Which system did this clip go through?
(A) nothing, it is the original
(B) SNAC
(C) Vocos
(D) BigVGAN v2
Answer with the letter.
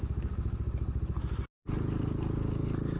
A